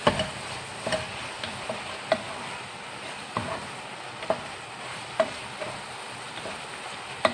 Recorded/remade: recorded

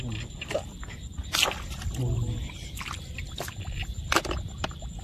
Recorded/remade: recorded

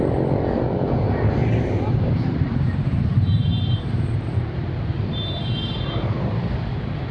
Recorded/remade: remade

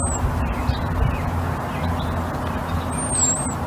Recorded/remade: recorded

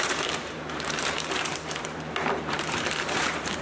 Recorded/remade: remade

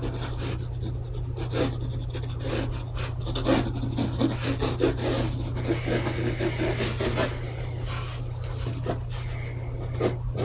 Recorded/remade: recorded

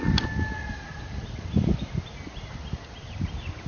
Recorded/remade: recorded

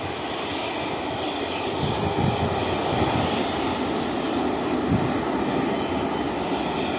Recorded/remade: recorded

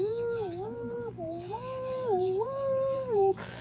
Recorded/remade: remade